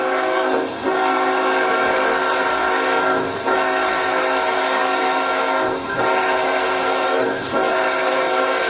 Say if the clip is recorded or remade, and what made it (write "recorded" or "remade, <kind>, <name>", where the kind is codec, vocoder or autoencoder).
remade, codec, SNAC